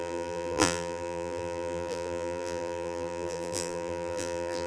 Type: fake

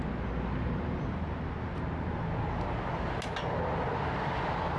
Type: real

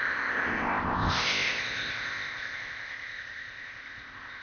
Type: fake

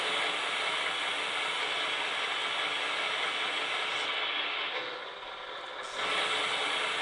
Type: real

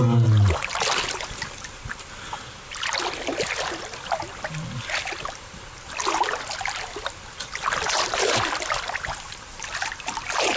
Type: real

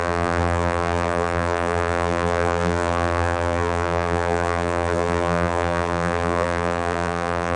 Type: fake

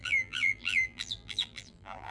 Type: fake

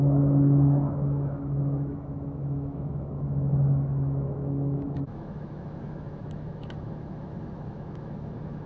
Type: fake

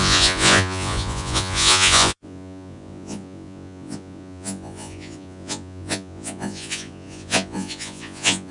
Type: fake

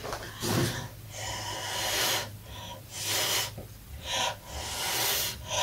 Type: real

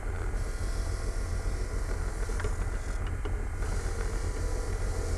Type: real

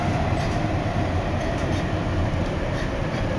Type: real